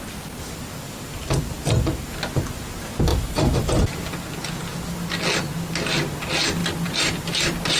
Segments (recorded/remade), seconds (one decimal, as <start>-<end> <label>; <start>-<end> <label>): 0.0-3.1 recorded; 3.1-3.8 remade; 3.8-6.6 recorded; 6.6-7.8 remade